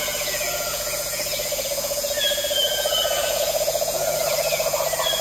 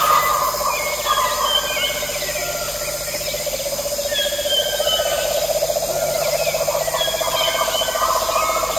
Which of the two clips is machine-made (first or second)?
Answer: first